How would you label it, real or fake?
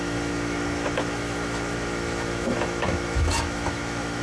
fake